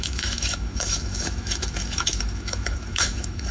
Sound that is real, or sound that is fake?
fake